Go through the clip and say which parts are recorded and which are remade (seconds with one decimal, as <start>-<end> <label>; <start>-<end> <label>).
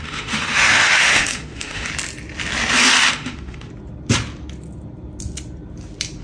0.0-1.9 remade; 1.9-3.1 recorded; 3.1-3.7 remade; 3.7-6.2 recorded